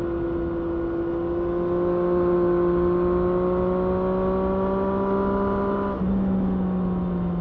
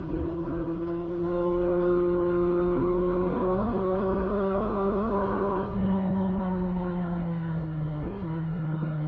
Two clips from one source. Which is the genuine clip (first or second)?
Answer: first